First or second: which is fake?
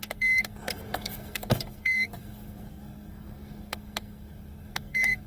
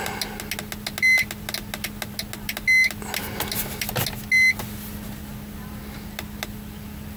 first